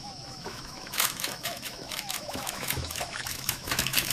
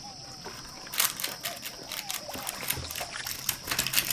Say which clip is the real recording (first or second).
second